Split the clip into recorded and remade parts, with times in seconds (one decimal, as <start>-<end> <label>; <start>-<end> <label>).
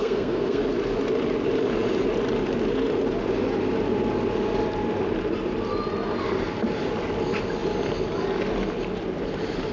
0.0-0.6 remade; 0.6-9.7 recorded